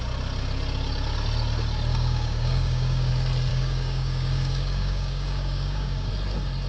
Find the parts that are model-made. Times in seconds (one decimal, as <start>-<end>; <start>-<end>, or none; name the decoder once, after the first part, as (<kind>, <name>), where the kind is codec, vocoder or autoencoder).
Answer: 1.9-3.1 (codec, DAC); 3.5-6.1